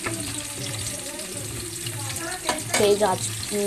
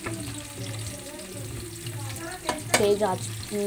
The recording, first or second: second